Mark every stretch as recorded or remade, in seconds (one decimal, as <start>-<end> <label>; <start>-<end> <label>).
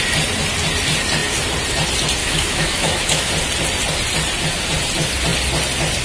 0.0-2.2 recorded; 2.2-3.3 remade; 3.3-6.0 recorded